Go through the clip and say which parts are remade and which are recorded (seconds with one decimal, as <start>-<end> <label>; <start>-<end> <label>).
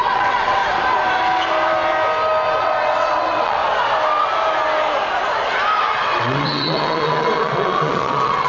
0.0-0.6 remade; 0.6-2.6 recorded; 2.6-3.6 remade; 3.6-6.0 recorded; 6.0-8.5 remade